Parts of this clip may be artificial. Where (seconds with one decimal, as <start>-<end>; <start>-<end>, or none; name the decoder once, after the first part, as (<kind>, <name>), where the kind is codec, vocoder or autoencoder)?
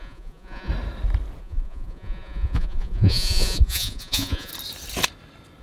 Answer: 0.0-0.7 (vocoder, Vocos); 1.4-4.5